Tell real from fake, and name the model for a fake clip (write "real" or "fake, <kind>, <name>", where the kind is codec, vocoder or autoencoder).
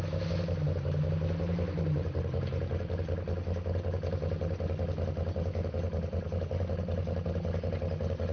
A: real